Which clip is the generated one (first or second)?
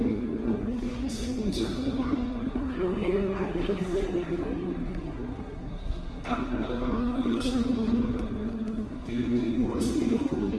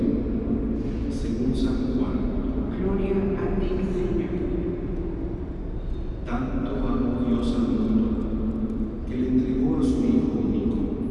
first